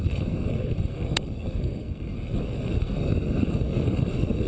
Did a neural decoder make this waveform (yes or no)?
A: yes